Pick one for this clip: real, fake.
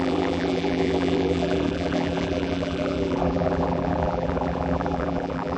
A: fake